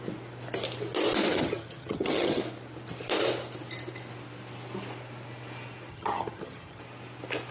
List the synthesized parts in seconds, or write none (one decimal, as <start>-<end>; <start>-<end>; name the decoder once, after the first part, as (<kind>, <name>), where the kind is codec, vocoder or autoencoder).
1.3-2.4 (vocoder, HiFi-GAN); 5.9-6.8